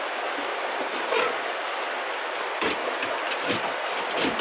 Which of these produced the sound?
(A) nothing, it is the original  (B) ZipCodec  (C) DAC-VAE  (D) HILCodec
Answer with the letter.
A